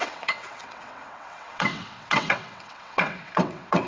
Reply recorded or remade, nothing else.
remade